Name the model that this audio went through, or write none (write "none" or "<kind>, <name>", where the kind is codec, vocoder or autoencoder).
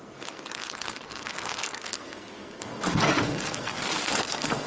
codec, SNAC